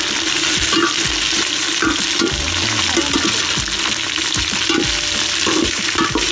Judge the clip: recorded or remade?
recorded